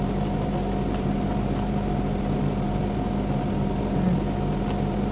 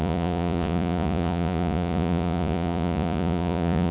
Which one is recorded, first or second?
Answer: first